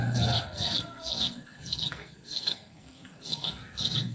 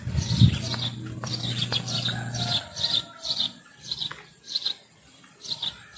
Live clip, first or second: second